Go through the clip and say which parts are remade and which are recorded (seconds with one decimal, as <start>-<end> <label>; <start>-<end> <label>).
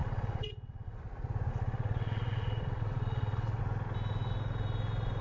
0.0-1.0 remade; 1.0-1.5 recorded; 1.5-3.6 remade; 3.6-5.2 recorded